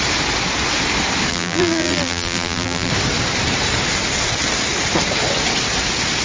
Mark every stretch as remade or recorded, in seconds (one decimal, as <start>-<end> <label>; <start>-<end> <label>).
0.0-1.3 recorded; 1.3-2.9 remade; 2.9-6.2 recorded